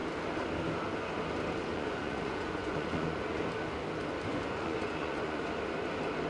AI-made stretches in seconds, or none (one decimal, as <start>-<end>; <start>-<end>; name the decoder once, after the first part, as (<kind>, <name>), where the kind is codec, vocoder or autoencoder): 1.7-3.4 (vocoder, Vocos); 4.3-5.4